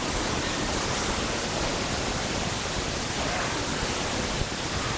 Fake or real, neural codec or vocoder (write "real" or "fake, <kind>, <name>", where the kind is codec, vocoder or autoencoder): real